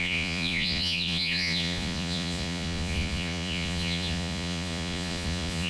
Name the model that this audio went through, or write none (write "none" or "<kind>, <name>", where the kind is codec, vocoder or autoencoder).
vocoder, Vocos